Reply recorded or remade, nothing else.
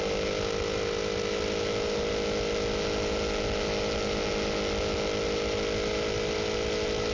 recorded